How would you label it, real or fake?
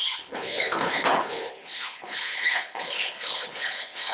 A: fake